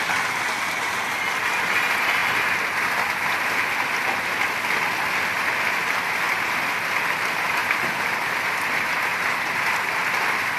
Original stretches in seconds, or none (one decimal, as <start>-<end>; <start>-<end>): 0.0-7.6; 9.2-10.6